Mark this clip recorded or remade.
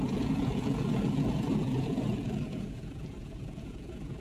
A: remade